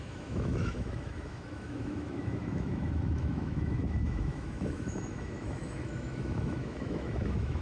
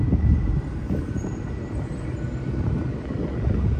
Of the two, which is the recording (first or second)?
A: second